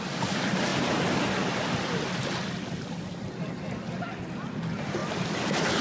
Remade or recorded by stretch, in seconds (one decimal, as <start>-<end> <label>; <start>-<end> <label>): 0.0-5.8 recorded